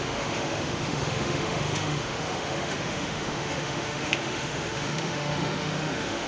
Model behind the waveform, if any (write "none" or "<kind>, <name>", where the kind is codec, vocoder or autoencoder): autoencoder, DAC-VAE